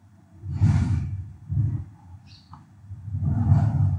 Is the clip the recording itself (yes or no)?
no